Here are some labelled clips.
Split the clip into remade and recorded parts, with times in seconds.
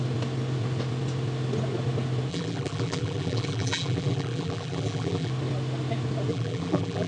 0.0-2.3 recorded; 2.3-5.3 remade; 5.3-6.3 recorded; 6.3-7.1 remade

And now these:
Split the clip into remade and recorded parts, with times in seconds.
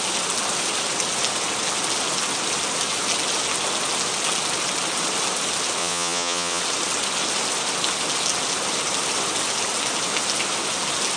0.0-5.8 recorded; 5.8-6.6 remade; 6.6-11.2 recorded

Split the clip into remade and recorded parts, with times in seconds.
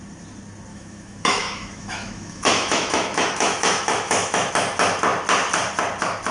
0.0-0.7 recorded; 0.7-4.5 remade; 4.5-6.3 recorded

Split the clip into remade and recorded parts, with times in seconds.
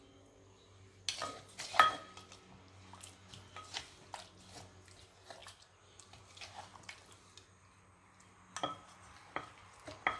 0.0-10.2 recorded